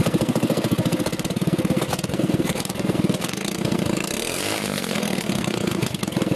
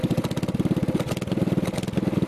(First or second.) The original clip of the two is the second